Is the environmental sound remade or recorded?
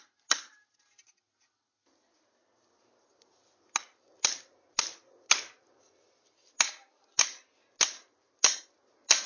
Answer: recorded